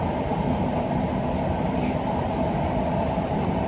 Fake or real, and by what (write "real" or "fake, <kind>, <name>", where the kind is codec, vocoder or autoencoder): fake, vocoder, BigVGAN v2